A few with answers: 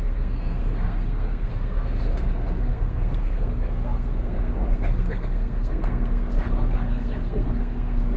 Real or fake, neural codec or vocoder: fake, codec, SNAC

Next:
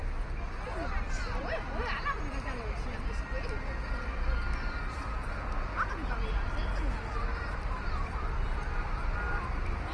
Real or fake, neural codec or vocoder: real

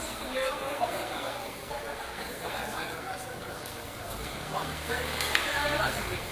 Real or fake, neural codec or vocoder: fake, codec, SNAC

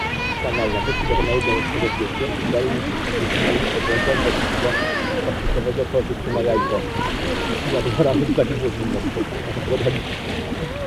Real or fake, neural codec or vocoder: real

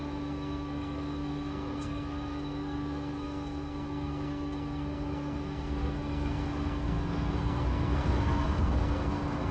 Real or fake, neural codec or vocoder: fake, codec, SNAC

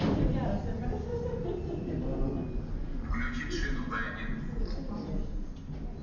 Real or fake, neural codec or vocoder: real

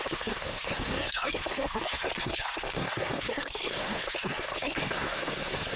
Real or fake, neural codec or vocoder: fake, codec, SNAC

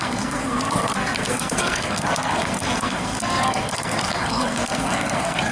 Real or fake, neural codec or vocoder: fake, codec, SNAC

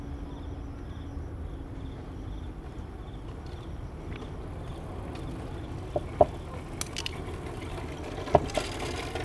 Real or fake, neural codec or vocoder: real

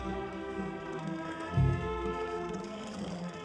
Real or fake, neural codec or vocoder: fake, codec, SNAC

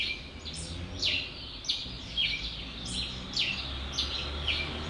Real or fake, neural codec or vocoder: real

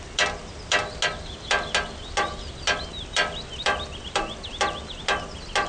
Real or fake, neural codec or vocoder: real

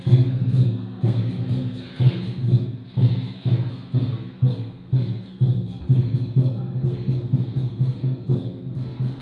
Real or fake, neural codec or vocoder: fake, codec, SNAC